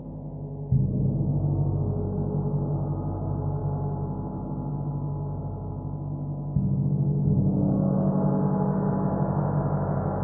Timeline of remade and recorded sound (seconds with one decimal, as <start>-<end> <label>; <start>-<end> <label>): 0.0-10.2 recorded